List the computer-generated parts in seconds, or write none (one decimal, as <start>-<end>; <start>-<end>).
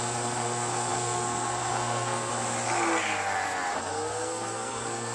0.0-2.3; 3.8-5.1